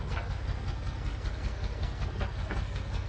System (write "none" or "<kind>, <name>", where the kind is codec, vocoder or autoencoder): codec, SNAC